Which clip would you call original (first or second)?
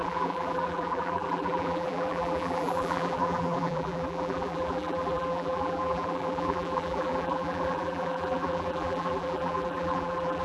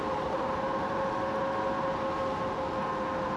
second